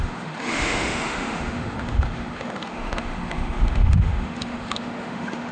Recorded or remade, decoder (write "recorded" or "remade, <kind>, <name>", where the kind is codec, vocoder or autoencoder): remade, autoencoder, DAC-VAE